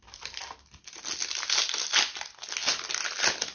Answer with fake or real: real